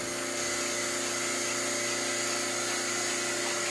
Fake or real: real